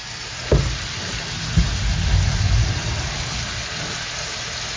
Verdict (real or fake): real